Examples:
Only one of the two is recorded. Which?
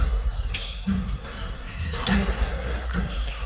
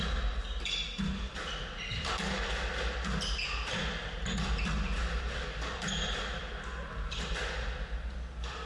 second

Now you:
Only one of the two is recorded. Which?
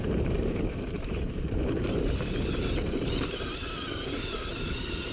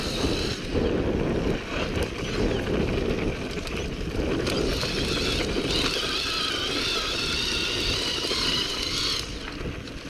second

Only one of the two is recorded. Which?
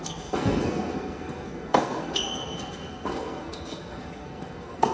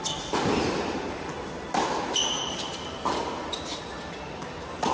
second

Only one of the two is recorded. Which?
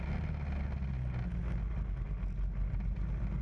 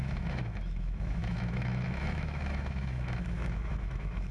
first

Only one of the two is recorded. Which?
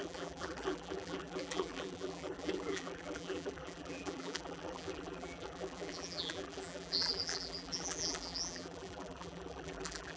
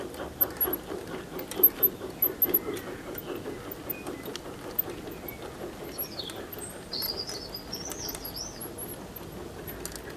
second